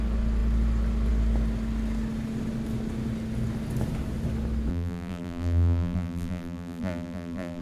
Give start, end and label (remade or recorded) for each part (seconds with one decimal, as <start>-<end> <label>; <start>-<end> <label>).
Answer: 0.0-4.7 recorded; 4.7-7.6 remade